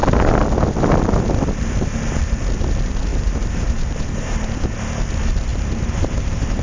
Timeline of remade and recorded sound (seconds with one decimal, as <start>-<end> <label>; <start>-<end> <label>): 0.0-3.1 recorded; 3.1-4.8 remade; 4.8-5.5 recorded; 5.5-6.6 remade